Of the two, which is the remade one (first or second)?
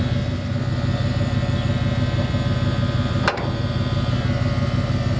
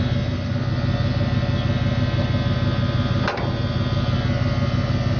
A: first